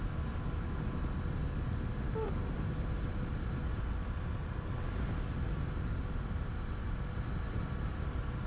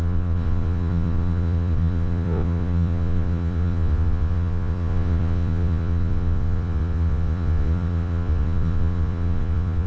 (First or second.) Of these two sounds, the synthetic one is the second